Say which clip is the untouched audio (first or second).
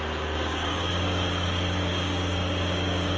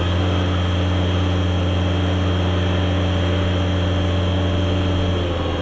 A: second